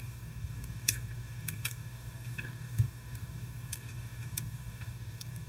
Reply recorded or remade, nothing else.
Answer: remade